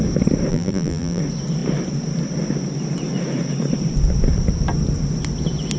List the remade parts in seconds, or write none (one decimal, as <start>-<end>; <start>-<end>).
0.5-1.2